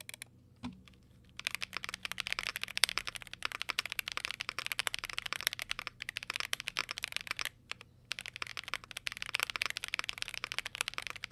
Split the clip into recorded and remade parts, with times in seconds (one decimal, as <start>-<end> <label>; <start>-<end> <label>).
0.0-2.5 recorded; 2.5-3.2 remade; 3.2-4.8 recorded; 4.8-5.5 remade; 5.5-6.8 recorded; 6.8-7.9 remade; 7.9-11.3 recorded